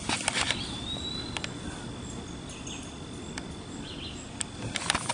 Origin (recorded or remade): recorded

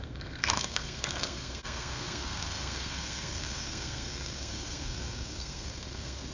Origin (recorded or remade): remade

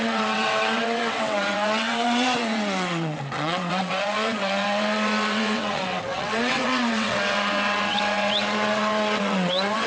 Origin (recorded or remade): remade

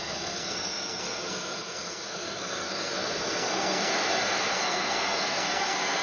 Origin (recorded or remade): remade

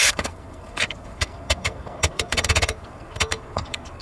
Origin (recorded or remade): remade